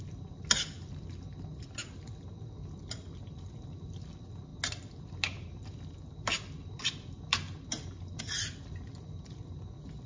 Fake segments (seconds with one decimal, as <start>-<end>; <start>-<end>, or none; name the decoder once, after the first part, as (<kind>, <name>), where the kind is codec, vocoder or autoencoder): none